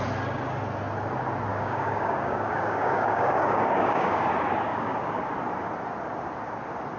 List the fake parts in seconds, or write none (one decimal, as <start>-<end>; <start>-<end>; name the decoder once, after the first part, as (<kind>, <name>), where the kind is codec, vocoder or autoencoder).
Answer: 1.5-4.3 (codec, DAC); 4.7-5.2